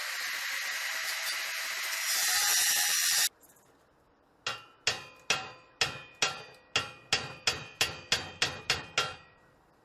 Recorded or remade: recorded